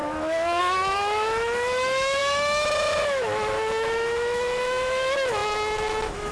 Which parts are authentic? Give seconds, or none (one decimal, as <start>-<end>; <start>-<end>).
none